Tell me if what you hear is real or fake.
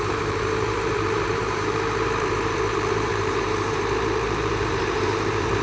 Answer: fake